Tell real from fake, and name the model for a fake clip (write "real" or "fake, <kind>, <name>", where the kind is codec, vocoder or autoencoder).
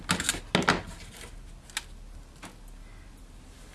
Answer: real